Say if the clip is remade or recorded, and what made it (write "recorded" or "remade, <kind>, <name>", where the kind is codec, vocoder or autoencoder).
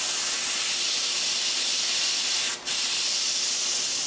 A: recorded